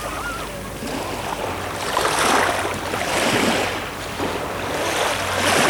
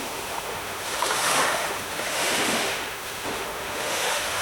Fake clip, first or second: second